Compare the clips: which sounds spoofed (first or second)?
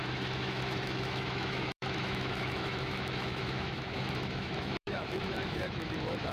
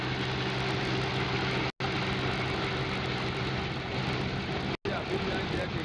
first